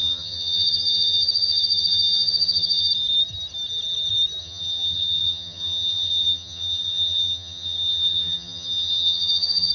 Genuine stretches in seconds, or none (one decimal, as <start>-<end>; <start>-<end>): 2.9-4.4